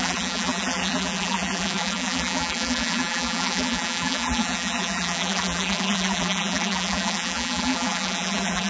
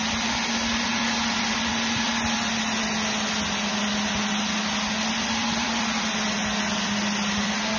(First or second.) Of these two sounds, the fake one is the first